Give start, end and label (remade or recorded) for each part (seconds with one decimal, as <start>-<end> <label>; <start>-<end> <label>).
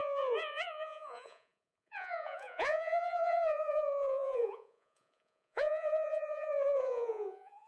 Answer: 0.0-7.7 remade